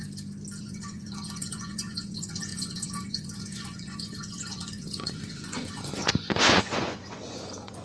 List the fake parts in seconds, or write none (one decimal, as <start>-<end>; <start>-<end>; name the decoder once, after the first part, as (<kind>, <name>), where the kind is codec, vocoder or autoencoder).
0.6-7.8 (vocoder, Vocos)